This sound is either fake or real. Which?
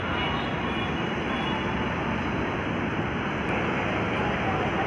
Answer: real